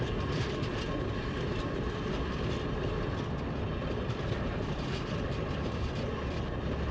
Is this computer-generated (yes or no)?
no